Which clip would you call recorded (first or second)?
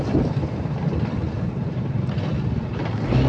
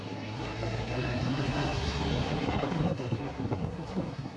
first